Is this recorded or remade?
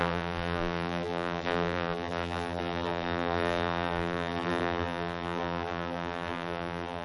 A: remade